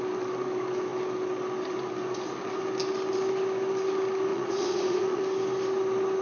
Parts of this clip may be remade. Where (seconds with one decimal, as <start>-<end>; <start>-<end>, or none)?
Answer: 4.3-5.2